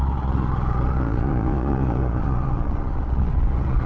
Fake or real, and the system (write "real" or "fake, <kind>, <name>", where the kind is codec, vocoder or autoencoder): fake, vocoder, Vocos